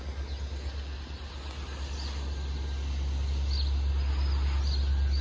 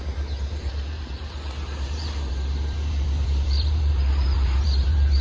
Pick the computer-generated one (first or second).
second